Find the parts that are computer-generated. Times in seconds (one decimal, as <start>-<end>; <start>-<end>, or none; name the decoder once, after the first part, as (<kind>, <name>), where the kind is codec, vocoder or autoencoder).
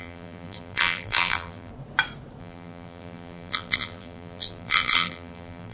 0.0-1.7 (vocoder, BigVGAN v2); 2.4-5.7